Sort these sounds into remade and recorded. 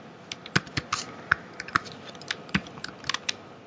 recorded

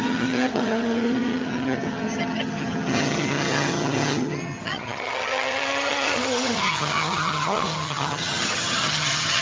remade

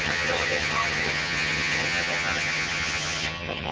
remade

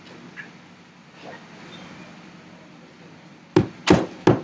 recorded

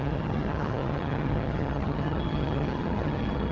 remade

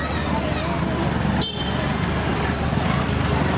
recorded